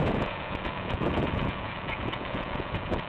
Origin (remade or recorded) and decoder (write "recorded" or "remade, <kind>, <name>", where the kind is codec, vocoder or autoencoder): remade, vocoder, Vocos